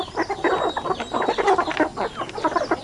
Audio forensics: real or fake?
real